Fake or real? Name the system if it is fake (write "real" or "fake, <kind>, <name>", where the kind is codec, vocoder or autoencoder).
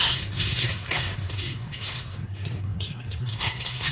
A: fake, codec, SNAC